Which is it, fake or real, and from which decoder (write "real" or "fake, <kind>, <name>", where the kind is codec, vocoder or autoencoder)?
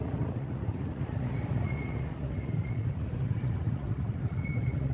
fake, vocoder, Vocos